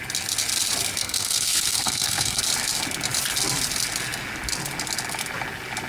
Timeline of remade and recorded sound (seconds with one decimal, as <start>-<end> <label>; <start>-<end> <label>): 0.0-1.0 recorded; 1.0-2.4 remade; 2.4-5.9 recorded